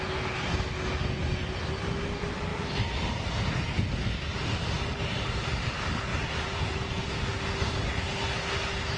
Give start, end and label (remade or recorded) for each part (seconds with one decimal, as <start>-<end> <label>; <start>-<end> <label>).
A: 0.0-4.3 recorded; 4.3-4.9 remade; 4.9-6.1 recorded; 6.1-7.2 remade; 7.2-9.0 recorded